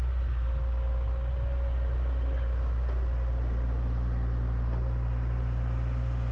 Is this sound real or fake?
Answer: real